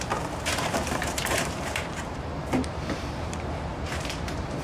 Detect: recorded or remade remade